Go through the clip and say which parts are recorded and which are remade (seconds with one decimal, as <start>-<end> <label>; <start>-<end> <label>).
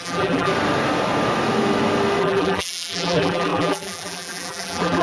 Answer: 0.0-0.5 remade; 0.5-2.2 recorded; 2.2-5.0 remade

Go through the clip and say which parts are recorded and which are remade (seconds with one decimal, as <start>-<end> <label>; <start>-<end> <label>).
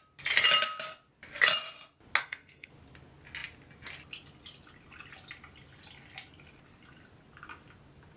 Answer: 0.0-2.2 recorded; 2.2-2.7 remade; 2.7-8.2 recorded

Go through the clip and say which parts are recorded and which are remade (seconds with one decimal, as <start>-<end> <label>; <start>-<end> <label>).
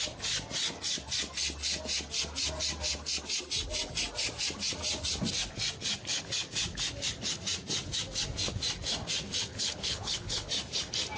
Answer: 0.0-9.5 recorded; 9.5-10.5 remade; 10.5-11.2 recorded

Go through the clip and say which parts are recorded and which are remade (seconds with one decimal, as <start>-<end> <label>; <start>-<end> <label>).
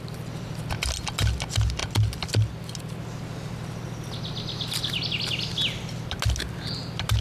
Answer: 0.0-7.2 recorded